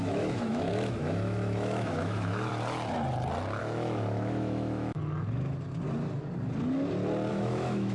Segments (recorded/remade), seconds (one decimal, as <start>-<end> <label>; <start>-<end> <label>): 0.0-2.5 remade; 2.5-3.6 recorded; 3.6-5.0 remade; 5.0-7.3 recorded; 7.3-7.9 remade